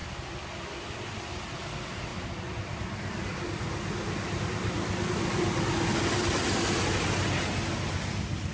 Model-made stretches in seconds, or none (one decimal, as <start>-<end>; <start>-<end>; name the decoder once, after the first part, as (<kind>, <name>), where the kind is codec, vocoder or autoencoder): none